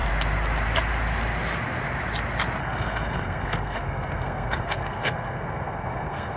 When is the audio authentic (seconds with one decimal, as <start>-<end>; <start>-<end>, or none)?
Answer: 0.0-2.6